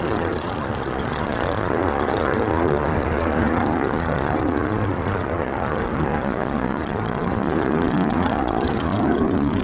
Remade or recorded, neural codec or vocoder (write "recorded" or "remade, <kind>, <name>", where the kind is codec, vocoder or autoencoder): remade, vocoder, Vocos